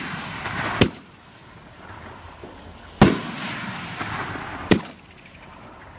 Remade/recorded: recorded